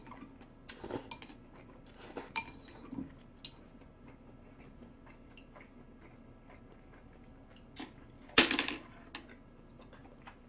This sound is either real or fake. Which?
real